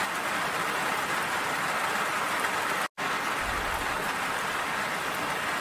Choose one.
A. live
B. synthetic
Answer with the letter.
A